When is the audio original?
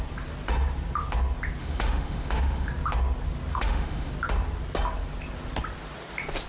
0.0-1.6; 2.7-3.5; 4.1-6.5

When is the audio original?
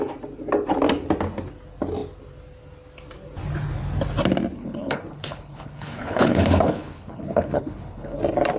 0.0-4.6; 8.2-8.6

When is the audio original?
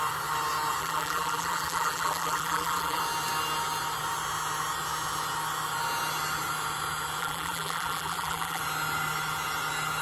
0.0-0.8; 3.0-7.2; 8.6-10.0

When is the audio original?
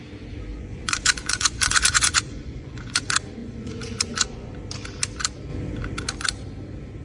0.0-0.5; 3.0-3.4; 4.5-7.0